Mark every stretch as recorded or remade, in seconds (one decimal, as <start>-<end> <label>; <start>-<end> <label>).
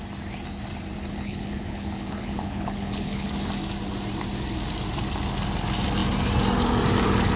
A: 0.0-1.1 recorded; 1.1-3.3 remade; 3.3-7.4 recorded